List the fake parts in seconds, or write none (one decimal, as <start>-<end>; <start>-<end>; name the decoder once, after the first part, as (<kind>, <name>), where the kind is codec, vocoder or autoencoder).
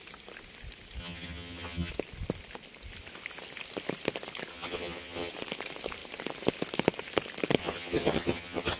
1.0-1.9 (vocoder, HiFi-GAN); 4.5-5.3; 7.6-8.8